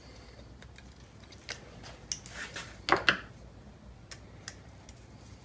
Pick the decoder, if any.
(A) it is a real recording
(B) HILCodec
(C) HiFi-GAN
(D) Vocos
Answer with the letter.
A